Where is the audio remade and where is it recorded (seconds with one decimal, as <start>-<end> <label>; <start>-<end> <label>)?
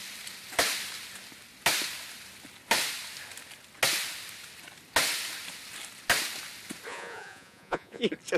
0.0-6.9 recorded; 6.9-8.0 remade; 8.0-8.4 recorded